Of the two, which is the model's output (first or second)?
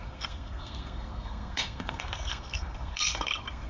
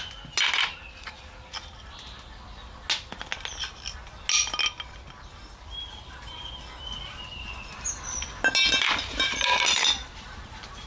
first